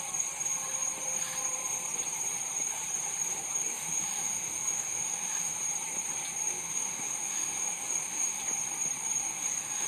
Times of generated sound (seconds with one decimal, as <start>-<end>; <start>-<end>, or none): 3.7-5.5; 6.5-8.4; 9.2-9.9